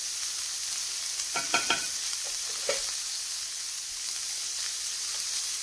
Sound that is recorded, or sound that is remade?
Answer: recorded